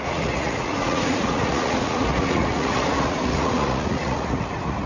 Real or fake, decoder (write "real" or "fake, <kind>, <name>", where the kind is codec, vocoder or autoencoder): fake, vocoder, Vocos